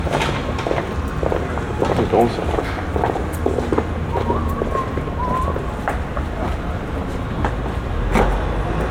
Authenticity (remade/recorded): recorded